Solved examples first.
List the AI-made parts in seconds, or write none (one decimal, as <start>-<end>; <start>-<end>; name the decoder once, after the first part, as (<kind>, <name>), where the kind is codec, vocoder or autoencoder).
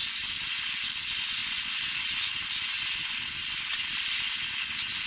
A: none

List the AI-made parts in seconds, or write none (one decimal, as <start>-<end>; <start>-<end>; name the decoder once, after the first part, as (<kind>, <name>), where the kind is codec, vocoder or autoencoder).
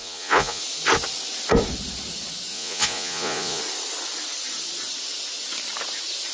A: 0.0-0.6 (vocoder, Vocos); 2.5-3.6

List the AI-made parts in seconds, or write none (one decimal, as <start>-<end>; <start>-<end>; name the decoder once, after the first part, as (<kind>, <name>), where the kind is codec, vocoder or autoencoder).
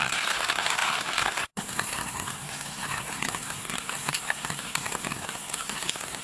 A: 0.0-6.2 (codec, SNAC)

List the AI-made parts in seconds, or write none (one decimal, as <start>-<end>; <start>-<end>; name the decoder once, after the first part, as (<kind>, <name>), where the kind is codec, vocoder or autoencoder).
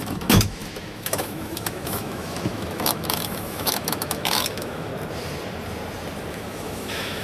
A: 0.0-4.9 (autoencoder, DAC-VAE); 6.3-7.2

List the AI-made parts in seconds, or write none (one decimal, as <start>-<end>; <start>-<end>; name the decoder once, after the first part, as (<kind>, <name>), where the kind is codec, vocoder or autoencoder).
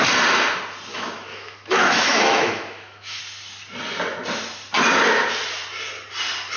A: 0.9-3.2 (autoencoder, DAC-VAE)